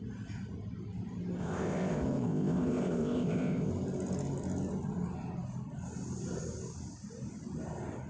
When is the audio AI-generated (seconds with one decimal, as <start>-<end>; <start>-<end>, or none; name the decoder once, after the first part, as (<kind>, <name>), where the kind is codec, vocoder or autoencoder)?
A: 1.4-3.7 (codec, ZipCodec)